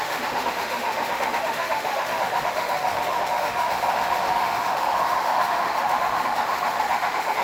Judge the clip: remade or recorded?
remade